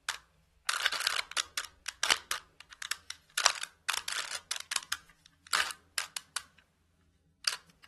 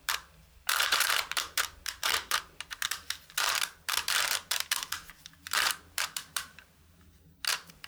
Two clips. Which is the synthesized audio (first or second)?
second